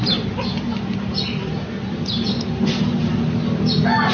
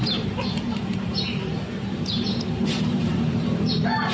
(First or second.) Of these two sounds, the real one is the first